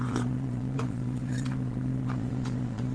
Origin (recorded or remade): remade